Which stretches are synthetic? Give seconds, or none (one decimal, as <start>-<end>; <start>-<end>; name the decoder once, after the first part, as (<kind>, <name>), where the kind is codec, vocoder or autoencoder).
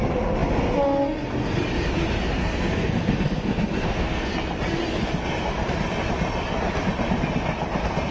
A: 2.4-4.3 (codec, SNAC)